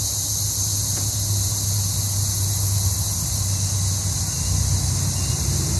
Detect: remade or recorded recorded